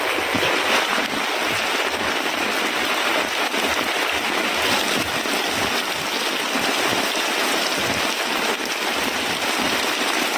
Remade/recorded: recorded